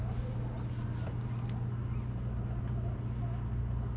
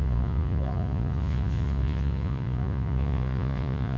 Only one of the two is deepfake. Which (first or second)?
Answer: second